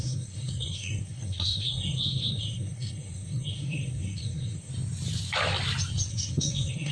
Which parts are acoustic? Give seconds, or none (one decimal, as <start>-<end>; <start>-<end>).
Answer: 4.7-6.1